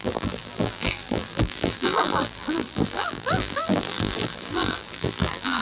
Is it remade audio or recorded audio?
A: remade